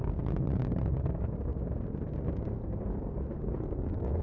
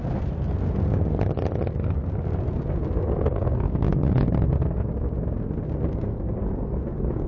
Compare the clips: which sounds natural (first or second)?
second